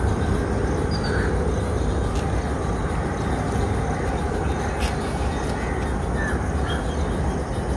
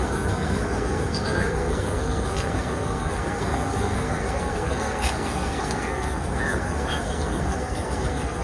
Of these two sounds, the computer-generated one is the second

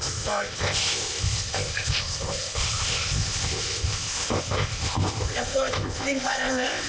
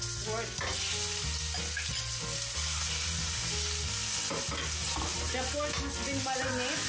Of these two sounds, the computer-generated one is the first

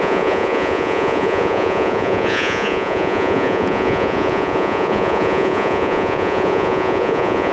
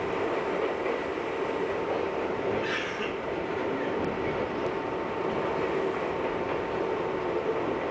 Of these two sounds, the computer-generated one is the first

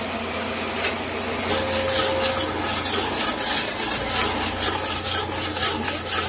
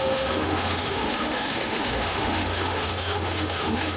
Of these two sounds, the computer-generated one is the second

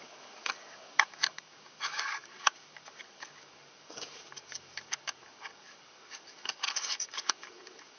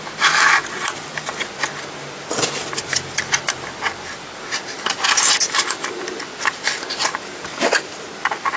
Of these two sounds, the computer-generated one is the first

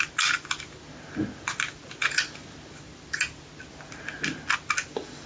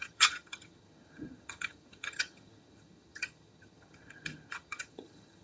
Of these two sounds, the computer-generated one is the second